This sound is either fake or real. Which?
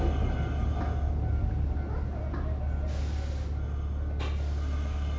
real